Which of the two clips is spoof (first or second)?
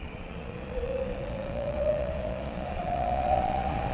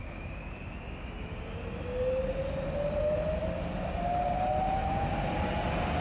first